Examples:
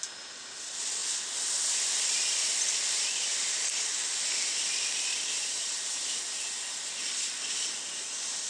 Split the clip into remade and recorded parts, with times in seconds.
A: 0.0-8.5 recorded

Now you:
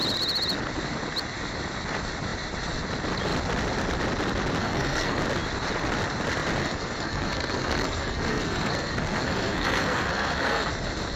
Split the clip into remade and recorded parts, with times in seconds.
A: 0.0-4.6 recorded; 4.6-5.2 remade; 5.2-6.6 recorded; 6.6-10.7 remade; 10.7-11.2 recorded

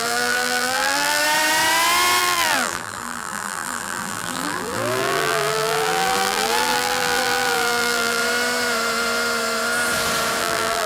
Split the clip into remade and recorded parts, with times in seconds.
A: 0.0-1.2 remade; 1.2-2.2 recorded; 2.2-8.2 remade; 8.2-10.4 recorded; 10.4-10.9 remade

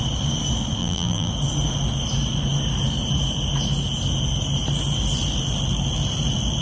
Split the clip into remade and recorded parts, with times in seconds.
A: 0.0-0.8 recorded; 0.8-1.3 remade; 1.3-6.6 recorded

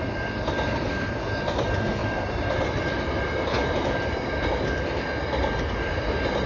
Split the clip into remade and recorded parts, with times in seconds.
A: 0.0-2.0 recorded; 2.0-4.5 remade; 4.5-6.5 recorded

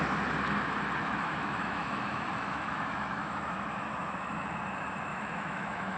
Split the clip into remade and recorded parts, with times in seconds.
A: 0.0-1.0 recorded; 1.0-4.6 remade; 4.6-5.1 recorded; 5.1-6.0 remade

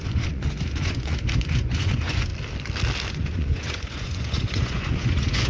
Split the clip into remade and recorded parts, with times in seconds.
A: 0.0-2.3 remade; 2.3-3.1 recorded; 3.1-5.5 remade

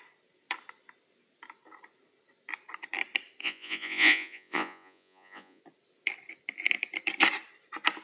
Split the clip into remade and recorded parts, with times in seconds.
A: 0.0-3.4 recorded; 3.4-5.6 remade; 5.6-8.0 recorded